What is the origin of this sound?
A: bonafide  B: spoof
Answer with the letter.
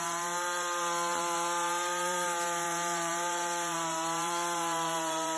B